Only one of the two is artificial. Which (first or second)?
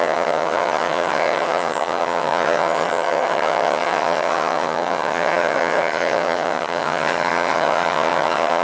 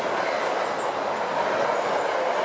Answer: first